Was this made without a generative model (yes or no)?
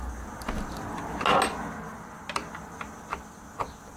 yes